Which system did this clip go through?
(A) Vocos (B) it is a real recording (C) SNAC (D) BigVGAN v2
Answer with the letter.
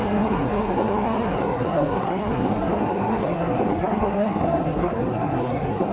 C